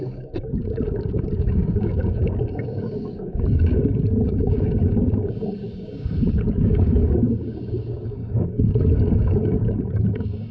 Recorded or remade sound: remade